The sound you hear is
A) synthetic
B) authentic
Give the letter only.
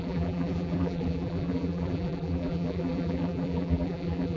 A